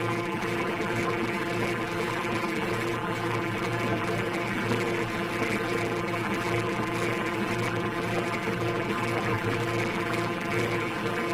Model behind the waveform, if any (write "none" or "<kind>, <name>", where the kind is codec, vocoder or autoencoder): vocoder, BigVGAN v2